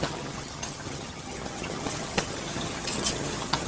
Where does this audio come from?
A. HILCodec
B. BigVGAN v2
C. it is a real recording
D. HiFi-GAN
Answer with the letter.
D